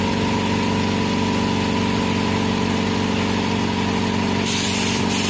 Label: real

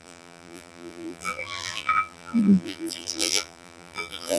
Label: fake